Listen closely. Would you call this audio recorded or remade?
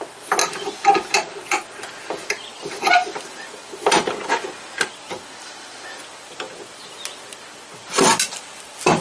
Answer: recorded